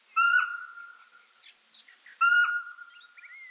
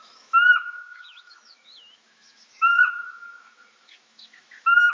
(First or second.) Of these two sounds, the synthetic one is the second